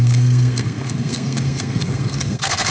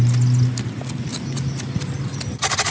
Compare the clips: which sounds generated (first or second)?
first